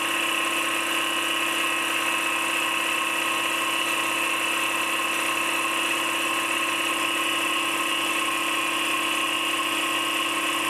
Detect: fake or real real